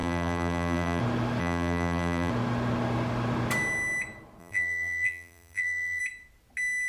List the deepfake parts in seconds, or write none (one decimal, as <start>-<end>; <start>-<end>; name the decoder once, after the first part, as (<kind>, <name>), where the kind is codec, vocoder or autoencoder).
0.0-1.0 (vocoder, BigVGAN v2); 1.4-2.3; 4.4-6.0